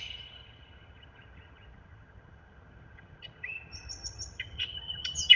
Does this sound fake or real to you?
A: fake